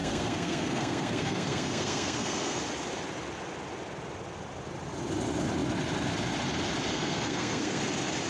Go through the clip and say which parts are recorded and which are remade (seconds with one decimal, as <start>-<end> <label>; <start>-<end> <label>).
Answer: 0.0-2.6 remade; 2.6-6.9 recorded; 6.9-7.8 remade; 7.8-8.3 recorded